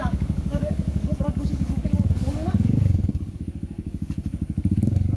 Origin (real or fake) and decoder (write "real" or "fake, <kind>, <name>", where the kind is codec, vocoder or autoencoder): fake, codec, DAC